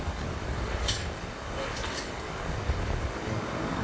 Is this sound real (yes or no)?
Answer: no